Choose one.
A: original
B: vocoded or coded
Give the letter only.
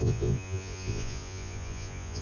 B